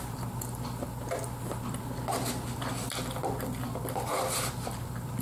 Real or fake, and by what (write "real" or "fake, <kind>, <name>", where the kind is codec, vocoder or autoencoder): real